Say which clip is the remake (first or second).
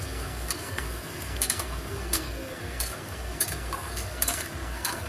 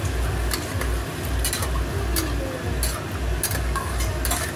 first